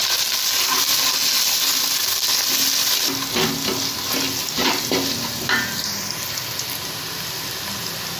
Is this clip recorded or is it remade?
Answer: recorded